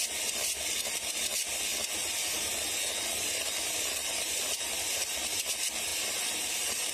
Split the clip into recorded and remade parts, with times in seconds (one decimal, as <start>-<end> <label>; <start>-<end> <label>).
0.0-6.9 recorded